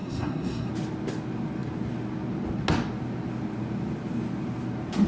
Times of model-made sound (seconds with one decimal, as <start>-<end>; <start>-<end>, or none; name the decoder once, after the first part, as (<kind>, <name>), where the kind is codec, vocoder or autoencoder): 0.0-0.7 (codec, SNAC)